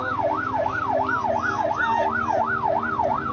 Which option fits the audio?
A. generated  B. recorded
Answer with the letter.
B